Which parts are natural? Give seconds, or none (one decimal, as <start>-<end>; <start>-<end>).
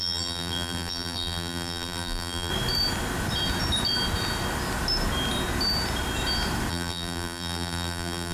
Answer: 2.5-6.7